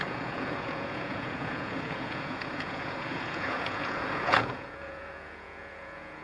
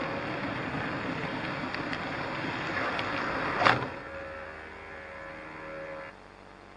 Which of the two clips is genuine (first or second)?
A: second